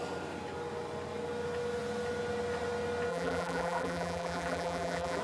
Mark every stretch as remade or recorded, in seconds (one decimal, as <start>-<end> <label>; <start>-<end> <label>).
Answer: 0.0-3.1 recorded; 3.1-5.2 remade